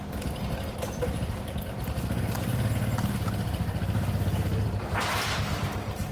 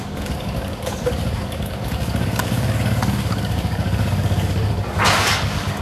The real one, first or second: first